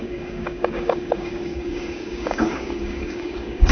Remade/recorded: remade